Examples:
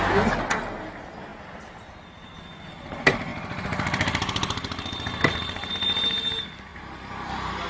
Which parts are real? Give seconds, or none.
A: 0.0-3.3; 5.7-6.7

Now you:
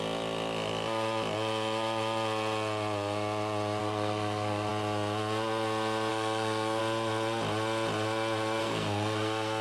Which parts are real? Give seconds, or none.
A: 0.0-3.8; 4.7-6.1; 6.8-8.6